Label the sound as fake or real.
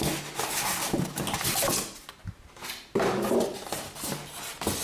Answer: real